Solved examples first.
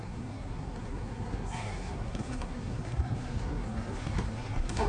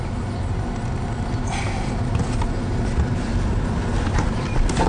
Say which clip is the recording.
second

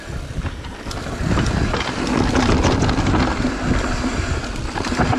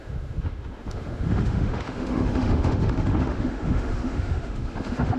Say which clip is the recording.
first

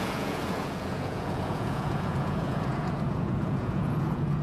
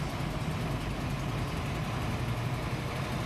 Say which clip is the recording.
second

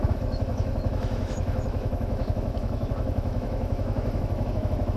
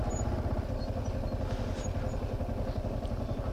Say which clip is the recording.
second